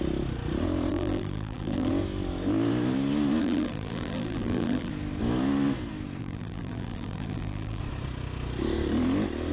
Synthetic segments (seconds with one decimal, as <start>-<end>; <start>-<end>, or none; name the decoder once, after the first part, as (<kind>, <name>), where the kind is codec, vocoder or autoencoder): 0.9-1.9 (vocoder, BigVGAN v2); 3.4-4.9; 6.2-7.8